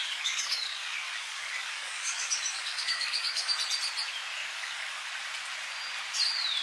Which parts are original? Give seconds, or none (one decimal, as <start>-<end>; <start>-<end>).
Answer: 3.5-4.4; 5.1-6.6